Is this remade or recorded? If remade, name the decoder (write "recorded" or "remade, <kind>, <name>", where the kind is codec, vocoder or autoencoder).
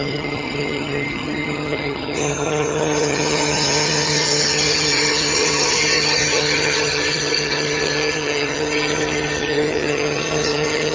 remade, vocoder, HiFi-GAN